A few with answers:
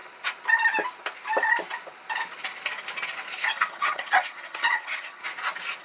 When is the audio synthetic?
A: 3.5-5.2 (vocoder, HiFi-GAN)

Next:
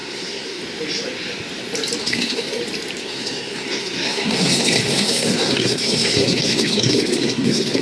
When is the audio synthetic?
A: 0.0-0.6 (codec, SNAC); 2.0-2.6; 3.0-7.8

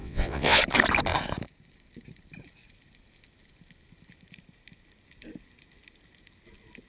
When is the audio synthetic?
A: 0.0-0.6 (vocoder, WaveNeXt)

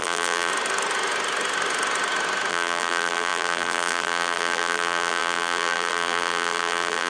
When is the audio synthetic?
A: 0.0-0.5 (vocoder, BigVGAN v2); 2.5-7.1

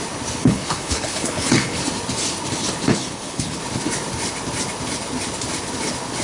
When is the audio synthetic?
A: 0.4-1.8 (codec, HILCodec); 2.9-3.6

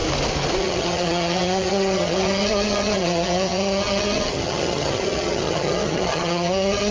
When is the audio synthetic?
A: 0.6-6.9 (vocoder, HiFi-GAN)

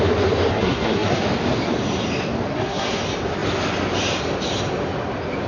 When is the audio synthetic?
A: 0.5-1.2 (codec, SNAC); 2.5-3.0

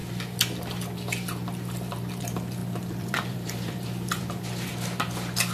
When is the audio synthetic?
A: 2.6-4.2 (vocoder, BigVGAN v2)